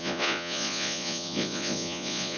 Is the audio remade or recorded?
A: remade